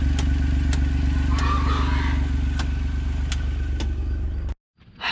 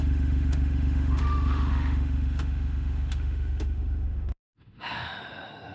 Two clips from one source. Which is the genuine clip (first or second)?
first